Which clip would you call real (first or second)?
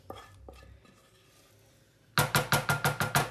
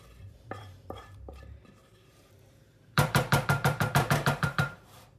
first